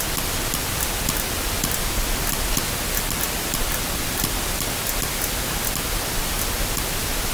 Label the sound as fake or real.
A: real